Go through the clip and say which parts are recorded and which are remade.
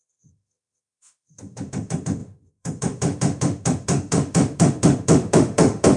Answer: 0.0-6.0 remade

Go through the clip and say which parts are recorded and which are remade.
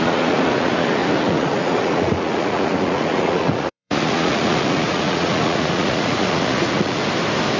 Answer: 0.0-7.0 remade; 7.0-7.6 recorded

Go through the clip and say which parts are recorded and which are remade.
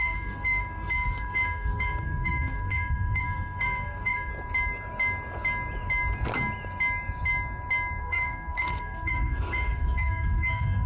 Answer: 0.0-4.3 remade; 4.3-8.0 recorded; 8.0-10.9 remade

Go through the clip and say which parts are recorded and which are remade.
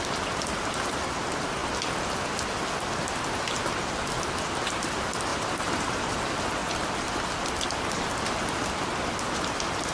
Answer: 0.0-9.9 recorded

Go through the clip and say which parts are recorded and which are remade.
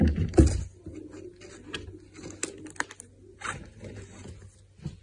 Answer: 0.0-5.0 recorded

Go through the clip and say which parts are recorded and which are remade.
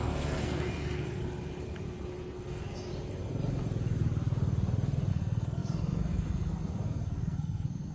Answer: 0.0-1.2 remade; 1.2-2.2 recorded; 2.2-2.9 remade; 2.9-5.1 recorded; 5.1-7.9 remade